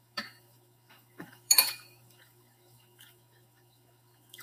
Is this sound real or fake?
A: fake